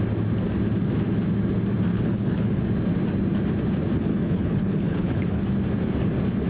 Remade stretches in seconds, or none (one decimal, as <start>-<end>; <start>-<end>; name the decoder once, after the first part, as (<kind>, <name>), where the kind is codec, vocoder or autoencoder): 1.9-2.6 (codec, HILCodec); 4.1-5.4